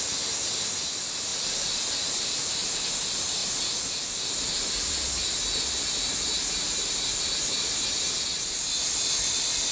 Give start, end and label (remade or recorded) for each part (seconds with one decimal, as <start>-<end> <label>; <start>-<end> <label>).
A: 0.0-9.7 recorded